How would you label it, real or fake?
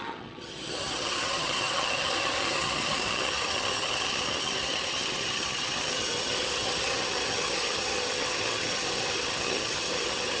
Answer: fake